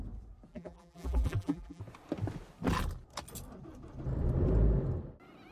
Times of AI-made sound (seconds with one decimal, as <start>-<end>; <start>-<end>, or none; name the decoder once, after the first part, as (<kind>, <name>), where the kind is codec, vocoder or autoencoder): 0.5-1.8 (vocoder, BigVGAN v2)